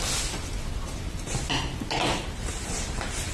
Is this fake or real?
real